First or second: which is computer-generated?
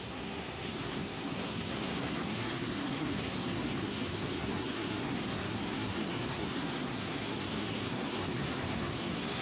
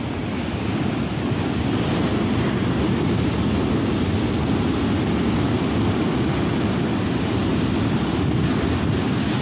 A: first